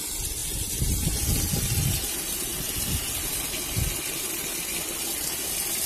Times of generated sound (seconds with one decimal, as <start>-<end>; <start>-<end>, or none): none